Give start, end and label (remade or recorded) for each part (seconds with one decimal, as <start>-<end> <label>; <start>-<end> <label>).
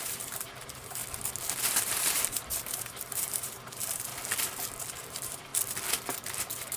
0.0-1.0 remade; 1.0-1.6 recorded; 1.6-4.1 remade; 4.1-5.0 recorded; 5.0-5.5 remade; 5.5-6.8 recorded